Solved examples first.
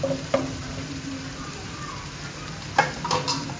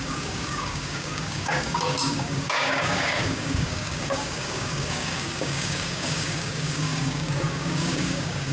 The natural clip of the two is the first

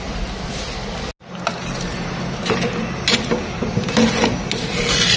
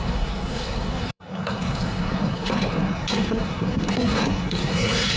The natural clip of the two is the first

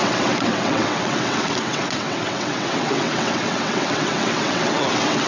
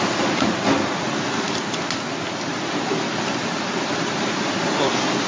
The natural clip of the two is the second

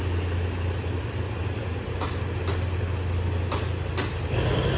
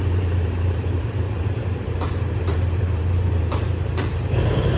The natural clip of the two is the first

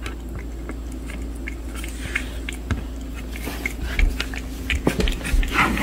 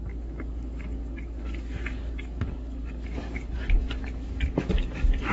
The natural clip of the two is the first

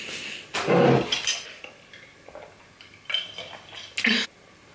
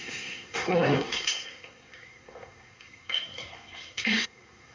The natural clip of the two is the first